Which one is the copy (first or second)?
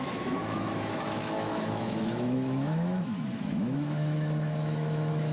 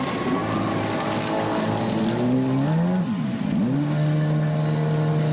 first